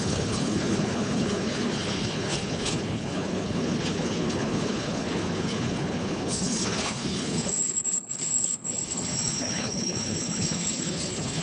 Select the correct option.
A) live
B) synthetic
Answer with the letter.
B